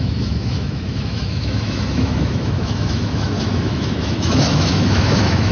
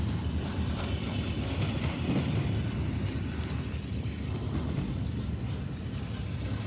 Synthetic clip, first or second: first